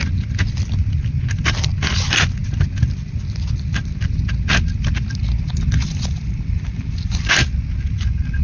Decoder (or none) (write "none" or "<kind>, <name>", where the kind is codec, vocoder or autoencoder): none